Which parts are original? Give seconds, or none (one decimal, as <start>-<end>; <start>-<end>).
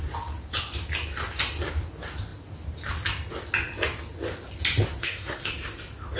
0.0-5.0; 5.5-6.2